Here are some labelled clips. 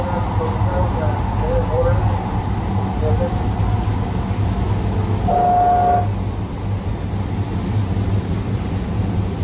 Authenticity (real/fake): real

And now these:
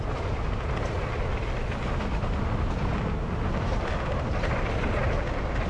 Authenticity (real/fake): real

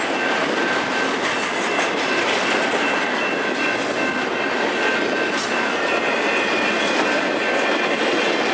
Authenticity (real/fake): real